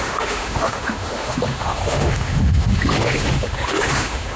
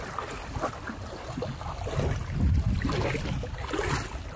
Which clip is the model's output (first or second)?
first